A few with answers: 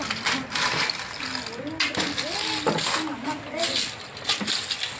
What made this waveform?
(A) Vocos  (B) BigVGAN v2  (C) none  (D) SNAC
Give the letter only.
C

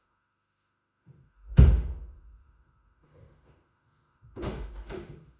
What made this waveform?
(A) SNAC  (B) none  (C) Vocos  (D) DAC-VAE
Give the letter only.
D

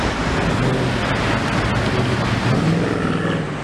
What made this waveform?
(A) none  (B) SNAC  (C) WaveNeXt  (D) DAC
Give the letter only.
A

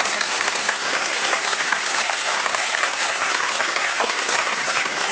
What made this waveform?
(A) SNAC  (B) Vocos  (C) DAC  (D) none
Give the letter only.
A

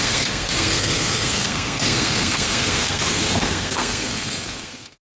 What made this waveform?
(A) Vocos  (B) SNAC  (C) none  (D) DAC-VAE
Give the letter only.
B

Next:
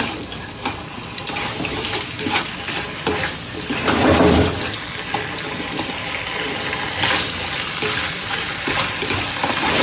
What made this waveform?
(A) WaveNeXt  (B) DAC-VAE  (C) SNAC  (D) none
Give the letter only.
D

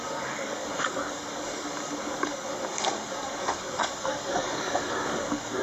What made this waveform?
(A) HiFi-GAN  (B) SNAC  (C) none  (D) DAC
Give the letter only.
D